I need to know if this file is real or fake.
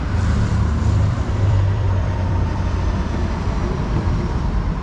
fake